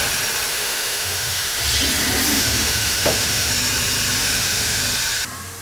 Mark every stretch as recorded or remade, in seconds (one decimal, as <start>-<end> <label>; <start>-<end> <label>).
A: 0.0-0.5 recorded; 0.5-1.5 remade; 1.5-2.3 recorded; 2.3-3.5 remade; 3.5-4.2 recorded; 4.2-4.8 remade; 4.8-5.6 recorded